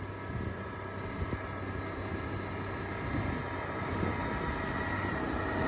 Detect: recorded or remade recorded